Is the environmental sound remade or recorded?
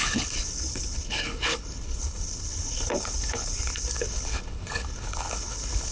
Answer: remade